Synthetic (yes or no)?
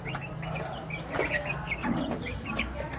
yes